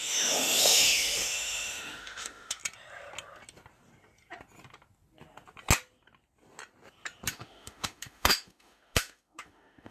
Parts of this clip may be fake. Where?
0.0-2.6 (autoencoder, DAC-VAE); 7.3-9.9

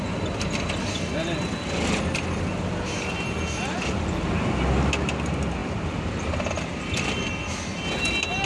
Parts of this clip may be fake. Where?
none

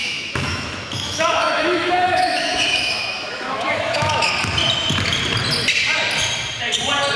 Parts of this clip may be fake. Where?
0.0-4.3 (autoencoder, DAC-VAE)

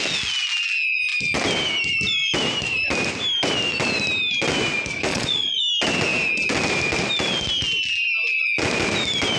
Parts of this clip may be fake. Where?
5.1-5.6 (vocoder, Vocos)

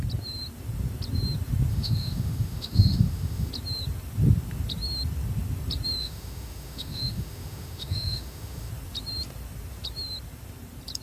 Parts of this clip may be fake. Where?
1.7-3.5 (autoencoder, DAC-VAE); 6.0-8.7

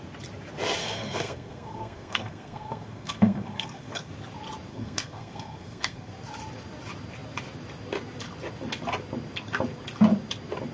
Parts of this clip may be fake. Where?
0.8-4.1 (codec, SNAC); 4.7-6.1